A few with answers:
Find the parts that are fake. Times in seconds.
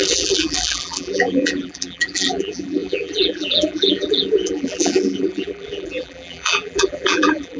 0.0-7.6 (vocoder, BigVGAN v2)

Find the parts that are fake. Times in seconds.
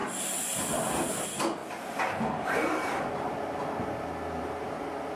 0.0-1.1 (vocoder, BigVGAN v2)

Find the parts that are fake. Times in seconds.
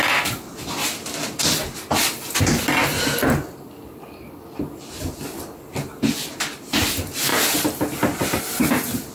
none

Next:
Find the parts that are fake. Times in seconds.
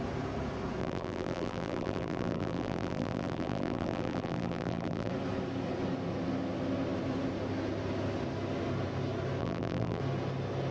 0.8-5.1 (vocoder, BigVGAN v2); 9.4-10.0